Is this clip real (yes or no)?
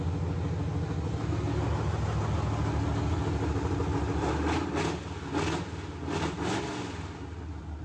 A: yes